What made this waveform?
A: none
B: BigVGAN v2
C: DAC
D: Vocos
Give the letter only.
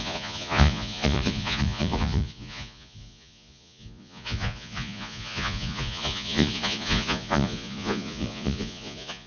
D